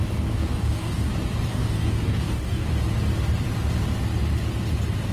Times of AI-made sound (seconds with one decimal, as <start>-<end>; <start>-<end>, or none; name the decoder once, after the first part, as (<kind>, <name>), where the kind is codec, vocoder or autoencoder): 0.5-1.1 (codec, DAC); 1.5-2.7